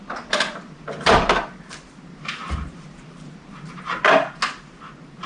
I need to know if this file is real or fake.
real